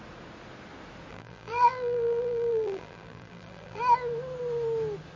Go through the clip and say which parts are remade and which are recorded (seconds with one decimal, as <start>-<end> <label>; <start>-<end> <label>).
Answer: 0.0-1.1 recorded; 1.1-3.8 remade; 3.8-5.2 recorded